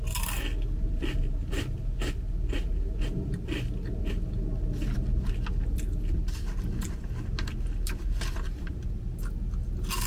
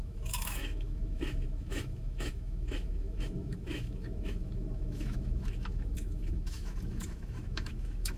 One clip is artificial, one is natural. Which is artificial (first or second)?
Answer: second